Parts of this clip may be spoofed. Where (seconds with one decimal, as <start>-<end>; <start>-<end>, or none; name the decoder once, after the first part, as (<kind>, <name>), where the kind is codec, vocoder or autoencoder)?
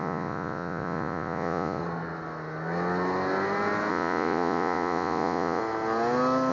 0.0-1.8 (vocoder, Vocos); 3.9-5.6